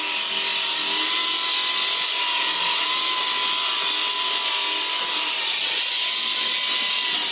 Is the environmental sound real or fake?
real